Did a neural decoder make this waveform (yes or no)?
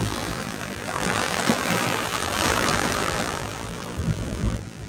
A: yes